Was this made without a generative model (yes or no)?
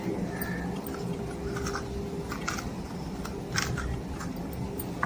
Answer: yes